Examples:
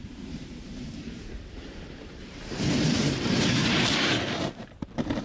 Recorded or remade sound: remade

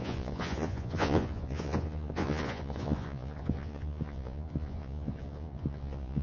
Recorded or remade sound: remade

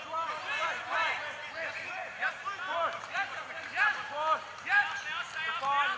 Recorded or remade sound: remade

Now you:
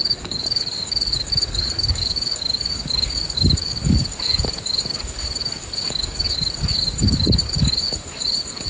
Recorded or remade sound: remade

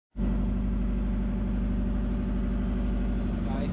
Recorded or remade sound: recorded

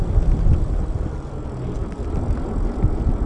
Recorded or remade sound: recorded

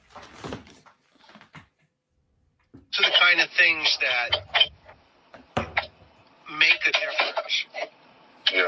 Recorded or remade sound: recorded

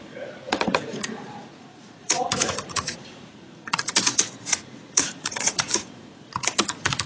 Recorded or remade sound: remade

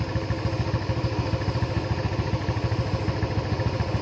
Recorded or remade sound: recorded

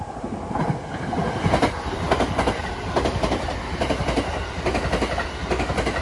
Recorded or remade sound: recorded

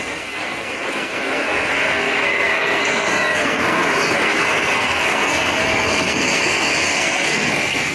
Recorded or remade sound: remade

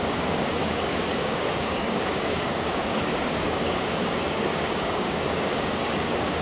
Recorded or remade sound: remade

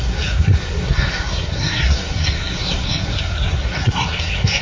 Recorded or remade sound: remade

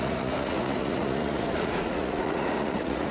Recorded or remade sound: remade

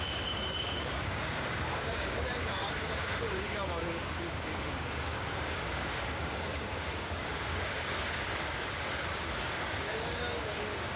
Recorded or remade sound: remade